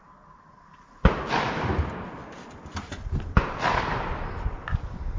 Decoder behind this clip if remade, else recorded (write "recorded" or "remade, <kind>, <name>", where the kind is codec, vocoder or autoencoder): recorded